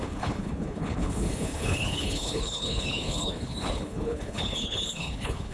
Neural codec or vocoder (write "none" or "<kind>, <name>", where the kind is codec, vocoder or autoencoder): codec, HILCodec